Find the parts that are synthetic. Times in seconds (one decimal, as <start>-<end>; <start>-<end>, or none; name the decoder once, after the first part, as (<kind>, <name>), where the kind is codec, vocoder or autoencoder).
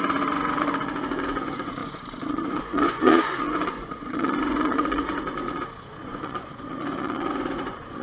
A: 0.0-8.0 (vocoder, Vocos)